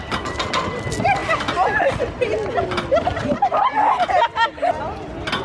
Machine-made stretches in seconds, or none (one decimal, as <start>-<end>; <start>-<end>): none